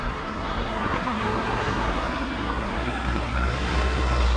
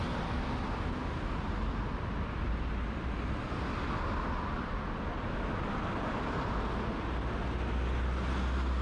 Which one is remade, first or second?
first